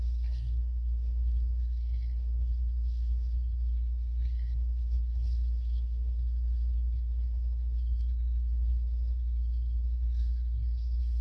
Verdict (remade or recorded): remade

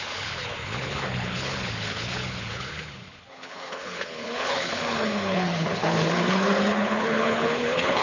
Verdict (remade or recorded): remade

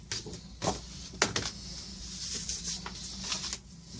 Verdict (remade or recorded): recorded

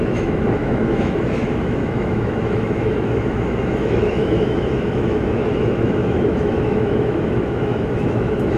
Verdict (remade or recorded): remade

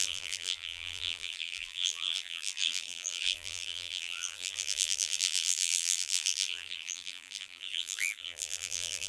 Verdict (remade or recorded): remade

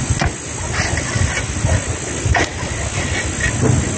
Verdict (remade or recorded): recorded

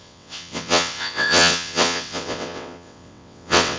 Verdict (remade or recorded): remade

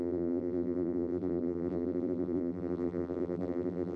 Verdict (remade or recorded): remade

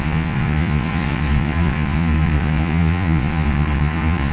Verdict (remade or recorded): remade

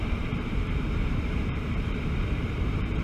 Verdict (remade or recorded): remade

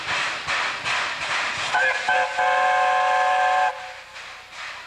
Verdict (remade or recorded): recorded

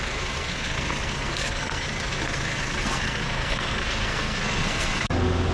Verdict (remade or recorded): remade